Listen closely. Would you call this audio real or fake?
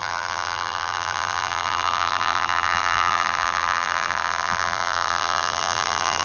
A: fake